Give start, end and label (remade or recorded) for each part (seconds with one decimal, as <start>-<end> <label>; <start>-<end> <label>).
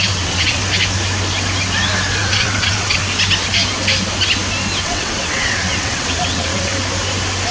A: 0.0-0.6 remade; 0.6-2.2 recorded; 2.2-3.0 remade; 3.0-4.8 recorded; 4.8-6.7 remade; 6.7-7.5 recorded